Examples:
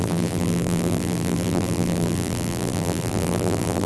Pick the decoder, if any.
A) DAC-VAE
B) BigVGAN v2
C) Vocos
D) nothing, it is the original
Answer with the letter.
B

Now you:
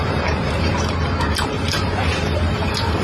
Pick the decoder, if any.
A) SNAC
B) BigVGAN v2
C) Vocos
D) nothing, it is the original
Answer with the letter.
B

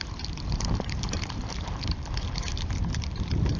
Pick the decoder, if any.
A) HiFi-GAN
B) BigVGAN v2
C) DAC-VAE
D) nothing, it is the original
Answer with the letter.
B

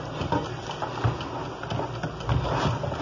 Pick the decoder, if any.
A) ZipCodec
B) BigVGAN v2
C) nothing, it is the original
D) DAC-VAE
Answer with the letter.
C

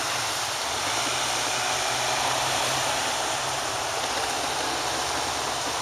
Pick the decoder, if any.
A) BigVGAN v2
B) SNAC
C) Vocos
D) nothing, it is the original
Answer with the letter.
D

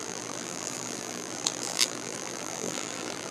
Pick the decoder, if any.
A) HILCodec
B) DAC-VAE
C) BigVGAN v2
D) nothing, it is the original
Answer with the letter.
C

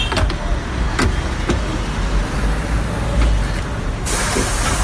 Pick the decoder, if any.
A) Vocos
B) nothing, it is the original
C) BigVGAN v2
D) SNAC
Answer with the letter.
B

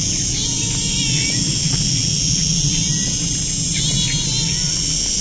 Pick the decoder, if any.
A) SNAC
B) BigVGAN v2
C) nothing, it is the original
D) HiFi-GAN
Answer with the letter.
C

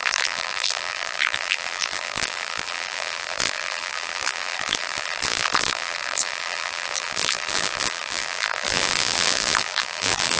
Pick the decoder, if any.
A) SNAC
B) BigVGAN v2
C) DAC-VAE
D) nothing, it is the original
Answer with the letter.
B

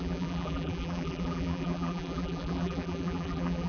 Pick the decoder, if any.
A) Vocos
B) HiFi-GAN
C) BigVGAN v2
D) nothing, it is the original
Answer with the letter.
C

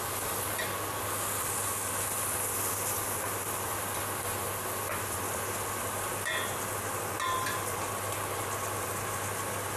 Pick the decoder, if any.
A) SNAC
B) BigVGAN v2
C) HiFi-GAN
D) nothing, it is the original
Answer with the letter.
D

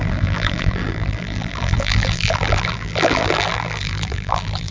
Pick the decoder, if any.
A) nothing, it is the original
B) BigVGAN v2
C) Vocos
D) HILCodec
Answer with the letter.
B